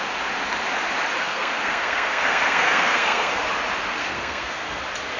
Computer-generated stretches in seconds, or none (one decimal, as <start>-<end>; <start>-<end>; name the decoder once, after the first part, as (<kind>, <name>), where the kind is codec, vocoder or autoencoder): 1.2-3.3 (codec, SNAC); 4.0-4.8